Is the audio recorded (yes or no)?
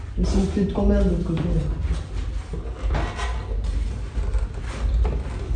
yes